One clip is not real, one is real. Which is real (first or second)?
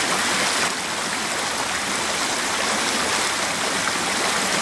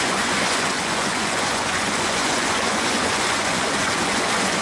first